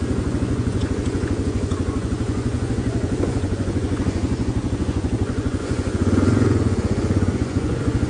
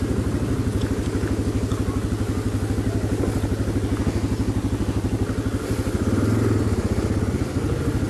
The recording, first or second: second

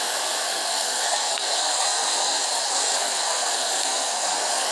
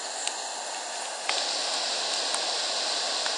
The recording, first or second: second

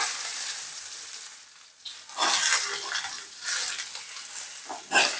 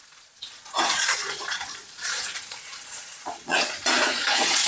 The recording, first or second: first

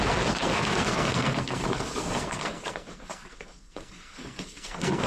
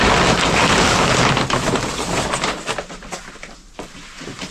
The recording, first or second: second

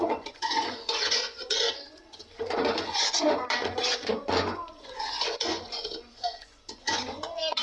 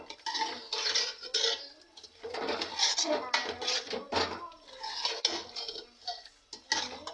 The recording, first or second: second